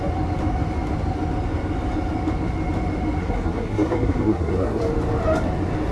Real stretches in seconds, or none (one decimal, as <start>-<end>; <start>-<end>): 0.0-3.2; 4.8-5.9